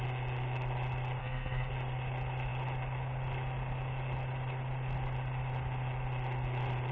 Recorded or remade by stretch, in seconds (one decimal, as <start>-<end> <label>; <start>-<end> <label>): 0.0-1.2 recorded; 1.2-1.7 remade; 1.7-6.9 recorded